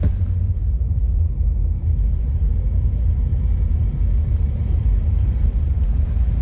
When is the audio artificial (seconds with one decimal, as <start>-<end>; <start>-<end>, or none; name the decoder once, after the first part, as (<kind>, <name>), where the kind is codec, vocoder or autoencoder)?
0.0-1.3 (vocoder, BigVGAN v2); 2.1-6.4